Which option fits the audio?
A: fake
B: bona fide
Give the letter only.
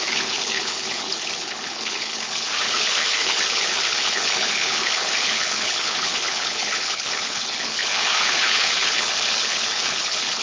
A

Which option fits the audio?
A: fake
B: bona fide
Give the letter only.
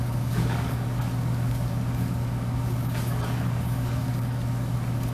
A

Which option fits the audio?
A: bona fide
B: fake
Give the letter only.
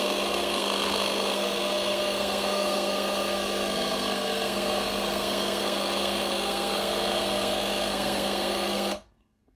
B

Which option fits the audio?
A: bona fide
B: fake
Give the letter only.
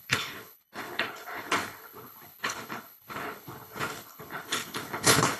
B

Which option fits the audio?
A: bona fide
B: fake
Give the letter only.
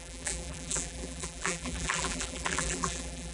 B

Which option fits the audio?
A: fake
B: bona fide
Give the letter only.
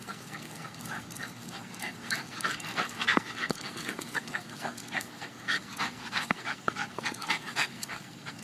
A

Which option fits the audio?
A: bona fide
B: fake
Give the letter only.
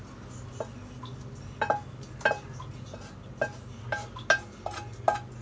A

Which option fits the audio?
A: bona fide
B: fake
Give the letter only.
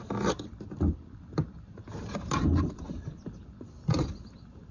A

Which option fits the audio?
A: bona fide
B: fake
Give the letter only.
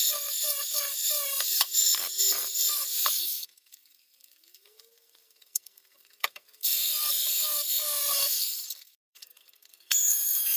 B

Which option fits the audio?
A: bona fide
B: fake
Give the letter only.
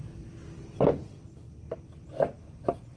A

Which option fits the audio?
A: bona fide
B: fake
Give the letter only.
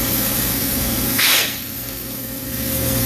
B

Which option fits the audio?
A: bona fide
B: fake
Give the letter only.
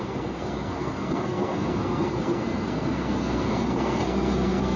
B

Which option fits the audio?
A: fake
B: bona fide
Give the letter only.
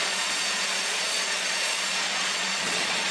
A